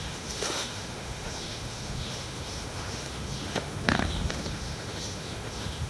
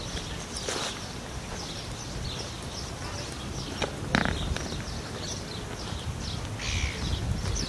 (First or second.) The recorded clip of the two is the second